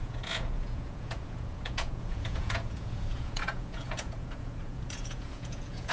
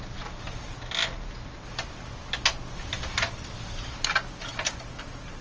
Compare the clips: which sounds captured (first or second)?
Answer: second